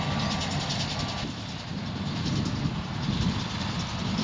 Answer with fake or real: real